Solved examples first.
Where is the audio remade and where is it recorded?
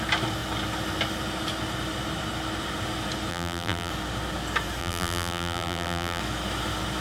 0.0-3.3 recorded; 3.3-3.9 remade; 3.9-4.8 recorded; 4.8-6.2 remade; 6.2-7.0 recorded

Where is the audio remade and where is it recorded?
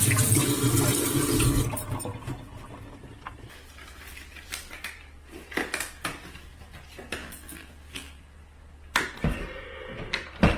0.0-7.2 recorded; 7.2-8.4 remade; 8.4-10.6 recorded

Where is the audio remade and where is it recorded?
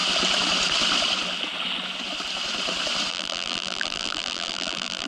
0.0-3.1 recorded; 3.1-5.1 remade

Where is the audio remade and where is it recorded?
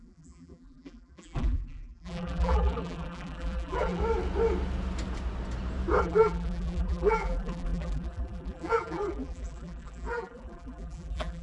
0.0-4.0 remade; 4.0-6.0 recorded; 6.0-11.4 remade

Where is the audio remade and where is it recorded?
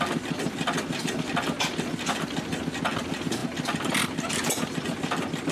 0.0-5.5 recorded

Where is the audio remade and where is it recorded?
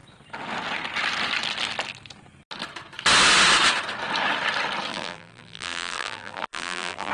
0.0-4.9 recorded; 4.9-7.1 remade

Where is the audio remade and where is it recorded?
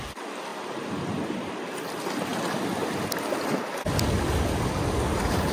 0.0-5.5 recorded